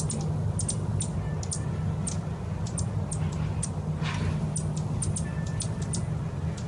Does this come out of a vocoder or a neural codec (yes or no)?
no